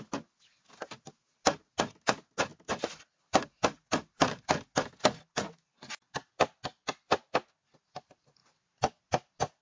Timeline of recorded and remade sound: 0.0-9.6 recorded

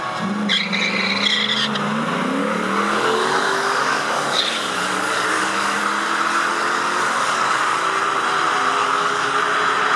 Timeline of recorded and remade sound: 0.0-2.4 recorded; 2.4-5.8 remade; 5.8-6.5 recorded; 6.5-7.8 remade; 7.8-8.8 recorded; 8.8-9.4 remade; 9.4-10.0 recorded